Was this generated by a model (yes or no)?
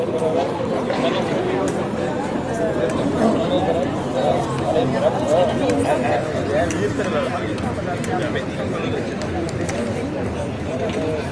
no